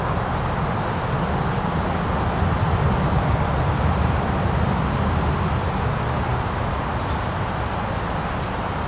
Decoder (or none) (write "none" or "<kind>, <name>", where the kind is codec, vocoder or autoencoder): none